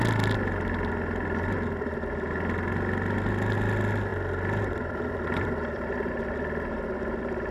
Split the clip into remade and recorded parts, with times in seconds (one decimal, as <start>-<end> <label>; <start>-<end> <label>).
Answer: 0.0-4.1 recorded; 4.1-6.1 remade; 6.1-7.5 recorded